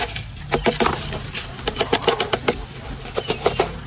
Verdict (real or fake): real